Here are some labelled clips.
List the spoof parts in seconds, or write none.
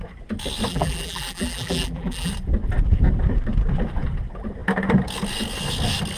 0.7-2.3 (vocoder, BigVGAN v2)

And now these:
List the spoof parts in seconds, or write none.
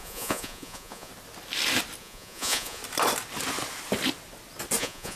0.0-1.1 (vocoder, Vocos); 2.0-2.8; 4.8-5.2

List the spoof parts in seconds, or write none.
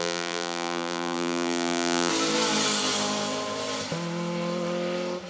0.0-2.1 (vocoder, BigVGAN v2)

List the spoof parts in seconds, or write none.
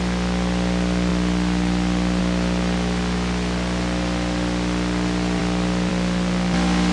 none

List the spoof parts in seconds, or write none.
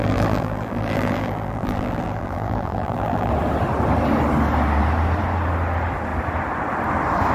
0.0-3.3 (vocoder, BigVGAN v2)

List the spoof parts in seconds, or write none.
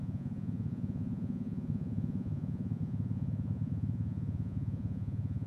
0.0-5.5 (vocoder, Vocos)